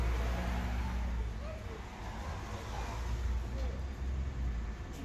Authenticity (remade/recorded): recorded